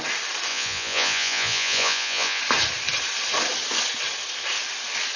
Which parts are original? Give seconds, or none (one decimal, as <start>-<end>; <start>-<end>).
0.0-0.5; 2.4-5.2